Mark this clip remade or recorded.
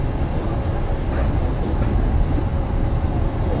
recorded